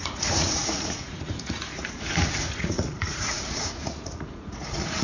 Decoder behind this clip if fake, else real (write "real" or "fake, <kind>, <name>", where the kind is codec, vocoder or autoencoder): fake, vocoder, Vocos